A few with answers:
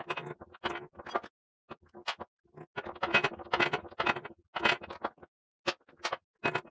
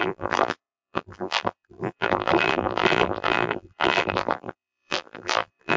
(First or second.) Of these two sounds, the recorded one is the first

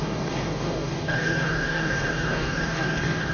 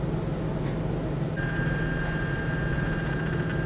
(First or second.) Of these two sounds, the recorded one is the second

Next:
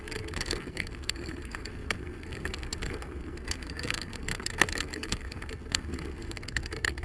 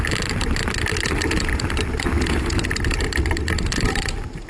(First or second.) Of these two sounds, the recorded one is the second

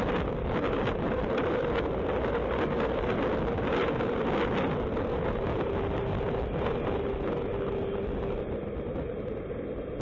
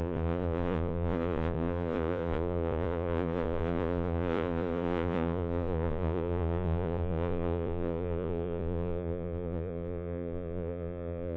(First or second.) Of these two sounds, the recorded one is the first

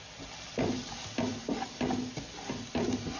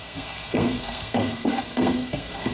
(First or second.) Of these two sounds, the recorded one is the first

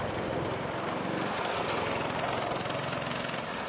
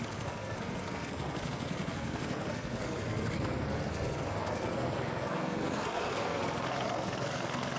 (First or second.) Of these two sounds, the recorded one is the first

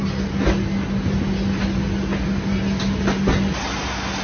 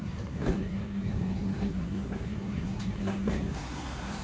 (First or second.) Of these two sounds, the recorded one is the first